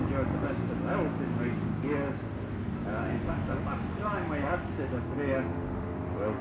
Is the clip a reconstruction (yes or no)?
no